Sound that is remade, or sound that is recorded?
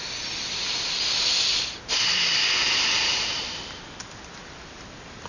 recorded